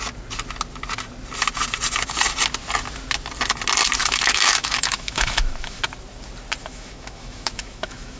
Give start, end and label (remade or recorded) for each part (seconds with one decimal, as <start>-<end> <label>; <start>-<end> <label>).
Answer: 0.0-4.0 recorded; 4.0-5.8 remade; 5.8-6.6 recorded; 6.6-8.2 remade